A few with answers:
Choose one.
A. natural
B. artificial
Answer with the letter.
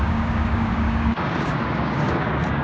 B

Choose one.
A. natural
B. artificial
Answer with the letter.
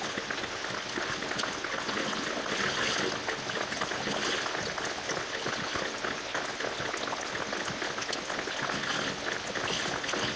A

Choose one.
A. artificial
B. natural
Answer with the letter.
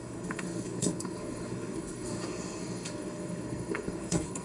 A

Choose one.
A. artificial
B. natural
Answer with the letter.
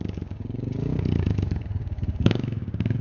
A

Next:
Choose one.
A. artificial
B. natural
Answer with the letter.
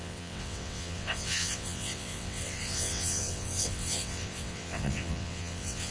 A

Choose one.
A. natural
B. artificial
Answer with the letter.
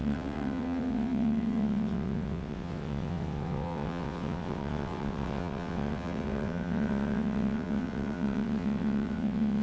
B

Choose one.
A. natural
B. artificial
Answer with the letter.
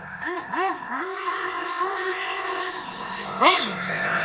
B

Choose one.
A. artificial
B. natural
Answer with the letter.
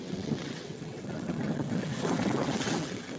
A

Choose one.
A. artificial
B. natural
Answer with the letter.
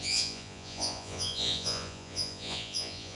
A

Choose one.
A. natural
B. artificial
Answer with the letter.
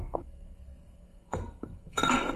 B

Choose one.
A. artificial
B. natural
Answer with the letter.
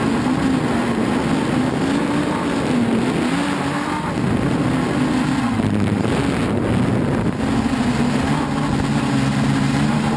B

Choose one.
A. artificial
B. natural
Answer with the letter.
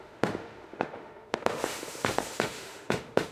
A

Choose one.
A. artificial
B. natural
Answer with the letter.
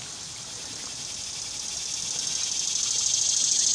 B